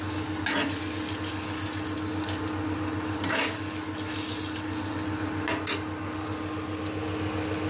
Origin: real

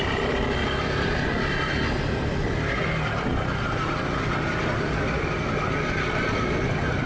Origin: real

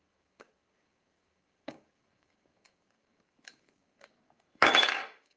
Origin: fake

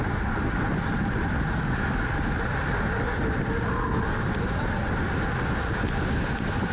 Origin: real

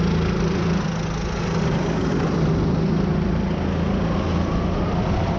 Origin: real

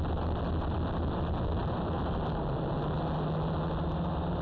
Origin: real